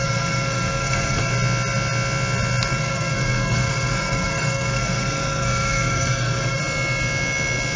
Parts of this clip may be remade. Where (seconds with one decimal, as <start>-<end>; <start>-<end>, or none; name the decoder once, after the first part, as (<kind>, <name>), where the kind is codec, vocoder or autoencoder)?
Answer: 0.0-1.3 (codec, SNAC); 2.7-6.6